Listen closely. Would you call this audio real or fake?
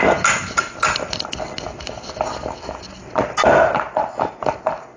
real